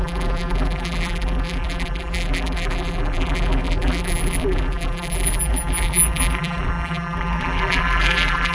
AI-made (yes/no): yes